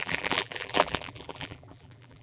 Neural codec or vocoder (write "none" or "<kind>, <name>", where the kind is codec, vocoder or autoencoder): vocoder, BigVGAN v2